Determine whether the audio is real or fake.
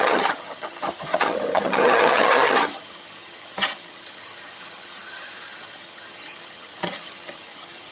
fake